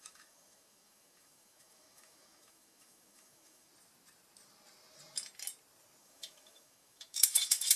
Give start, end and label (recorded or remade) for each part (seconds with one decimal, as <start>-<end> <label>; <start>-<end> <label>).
0.0-3.7 remade; 3.7-6.0 recorded; 6.0-7.8 remade